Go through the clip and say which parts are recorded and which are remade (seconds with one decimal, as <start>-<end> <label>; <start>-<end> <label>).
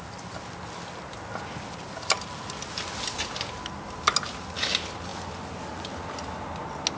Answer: 0.0-7.0 recorded